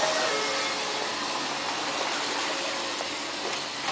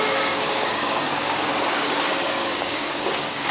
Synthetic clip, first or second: second